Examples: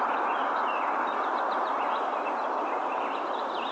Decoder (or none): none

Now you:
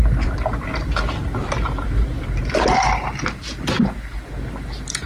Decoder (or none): none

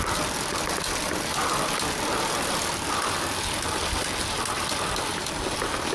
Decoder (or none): none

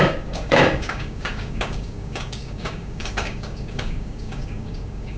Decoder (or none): codec, DAC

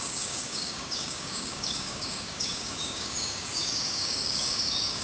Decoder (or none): codec, DAC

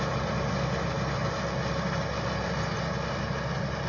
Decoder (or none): none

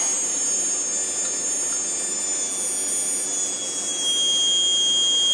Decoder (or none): none